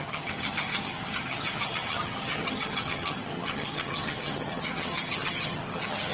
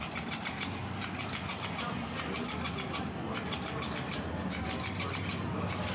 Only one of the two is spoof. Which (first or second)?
first